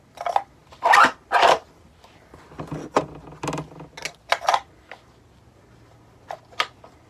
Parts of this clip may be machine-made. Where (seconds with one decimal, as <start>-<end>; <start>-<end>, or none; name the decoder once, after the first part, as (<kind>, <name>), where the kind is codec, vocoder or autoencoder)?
none

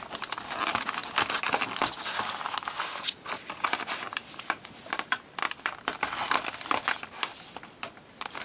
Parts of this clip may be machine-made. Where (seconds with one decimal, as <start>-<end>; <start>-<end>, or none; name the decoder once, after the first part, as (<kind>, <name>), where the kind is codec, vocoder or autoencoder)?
none

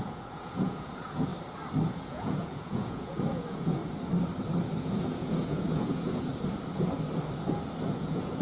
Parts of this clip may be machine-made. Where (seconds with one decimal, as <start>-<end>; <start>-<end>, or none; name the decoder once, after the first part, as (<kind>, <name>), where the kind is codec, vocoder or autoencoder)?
0.0-1.3 (vocoder, Vocos); 1.9-3.8; 4.8-6.3; 7.9-8.4

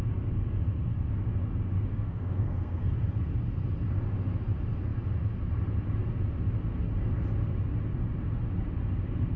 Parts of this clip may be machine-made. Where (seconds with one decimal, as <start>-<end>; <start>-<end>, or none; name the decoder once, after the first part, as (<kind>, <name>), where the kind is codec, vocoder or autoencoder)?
1.9-2.9 (codec, SNAC)

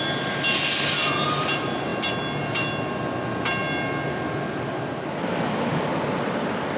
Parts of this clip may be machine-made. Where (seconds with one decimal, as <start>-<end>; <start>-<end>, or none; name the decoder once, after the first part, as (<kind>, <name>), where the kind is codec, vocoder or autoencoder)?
none

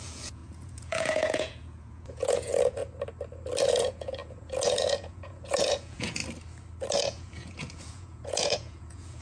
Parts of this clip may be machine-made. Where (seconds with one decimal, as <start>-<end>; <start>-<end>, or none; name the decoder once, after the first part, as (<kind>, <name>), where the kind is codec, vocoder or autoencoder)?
0.0-2.8 (vocoder, Vocos); 3.7-6.2; 7.0-9.2

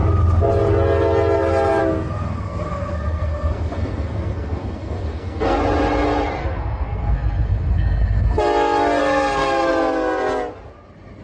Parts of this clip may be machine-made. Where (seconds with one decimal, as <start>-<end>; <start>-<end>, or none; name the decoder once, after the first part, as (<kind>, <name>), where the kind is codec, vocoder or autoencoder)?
1.8-5.6 (codec, SNAC); 6.4-8.4; 9.0-9.7

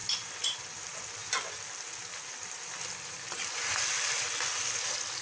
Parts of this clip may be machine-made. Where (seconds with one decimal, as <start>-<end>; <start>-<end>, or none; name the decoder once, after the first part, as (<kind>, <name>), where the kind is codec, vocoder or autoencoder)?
none